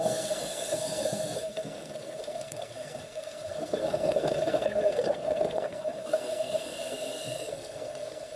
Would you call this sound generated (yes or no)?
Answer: yes